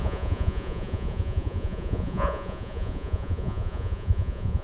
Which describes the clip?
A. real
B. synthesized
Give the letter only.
B